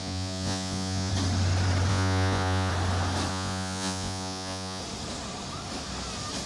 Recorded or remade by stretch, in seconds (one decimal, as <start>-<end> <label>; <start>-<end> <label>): 0.0-1.1 remade; 1.1-1.9 recorded; 1.9-2.7 remade; 2.7-3.3 recorded; 3.3-4.8 remade; 4.8-6.5 recorded

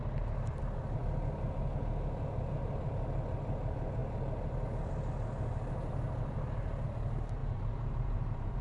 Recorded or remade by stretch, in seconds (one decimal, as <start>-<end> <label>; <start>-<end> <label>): 0.0-7.4 recorded; 7.4-8.6 remade

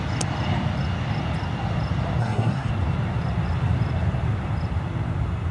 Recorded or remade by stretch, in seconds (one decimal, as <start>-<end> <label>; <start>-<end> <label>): 0.0-2.2 recorded; 2.2-2.7 remade; 2.7-5.5 recorded

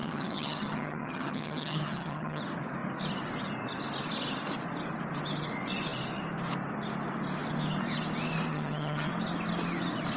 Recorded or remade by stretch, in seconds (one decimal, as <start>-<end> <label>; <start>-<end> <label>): 0.0-2.4 remade; 2.4-8.5 recorded; 8.5-9.1 remade; 9.1-10.2 recorded

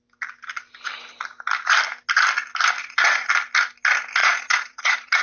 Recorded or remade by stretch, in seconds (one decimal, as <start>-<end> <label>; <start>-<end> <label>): 0.0-2.8 recorded; 2.8-3.3 remade; 3.3-4.2 recorded; 4.2-5.2 remade

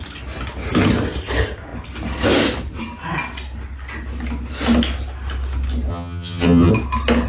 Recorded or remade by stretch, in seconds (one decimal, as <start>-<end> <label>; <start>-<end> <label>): 0.0-5.9 recorded; 5.9-6.7 remade; 6.7-7.3 recorded